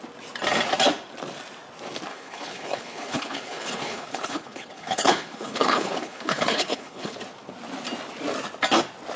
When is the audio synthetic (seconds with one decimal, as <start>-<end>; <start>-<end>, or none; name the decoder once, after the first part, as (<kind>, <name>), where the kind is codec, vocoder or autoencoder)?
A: 2.1-7.2 (codec, HILCodec)